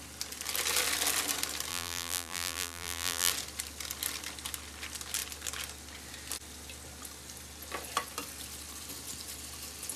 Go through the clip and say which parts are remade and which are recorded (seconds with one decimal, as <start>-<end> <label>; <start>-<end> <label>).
0.0-1.7 recorded; 1.7-3.3 remade; 3.3-10.0 recorded